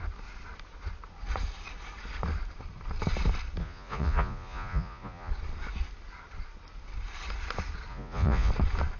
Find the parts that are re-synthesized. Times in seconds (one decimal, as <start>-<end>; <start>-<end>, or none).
3.6-5.3; 7.9-8.5